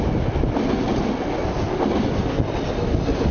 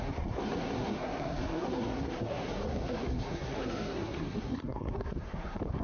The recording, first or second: first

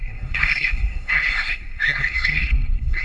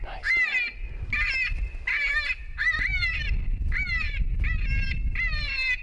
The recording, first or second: second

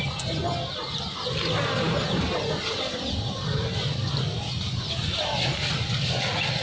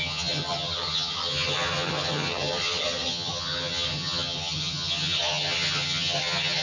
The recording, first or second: first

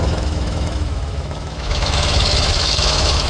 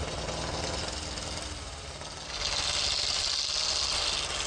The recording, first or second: second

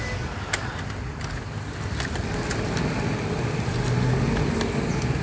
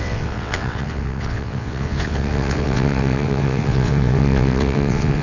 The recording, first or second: first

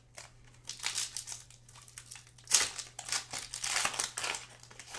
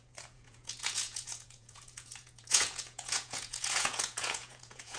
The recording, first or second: first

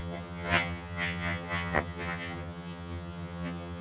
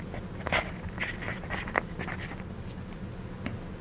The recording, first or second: second